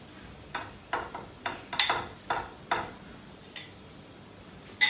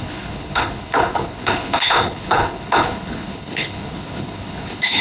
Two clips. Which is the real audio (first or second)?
first